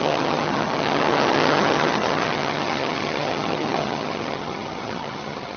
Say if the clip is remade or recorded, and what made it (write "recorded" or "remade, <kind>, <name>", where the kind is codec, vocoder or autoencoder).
remade, vocoder, HiFi-GAN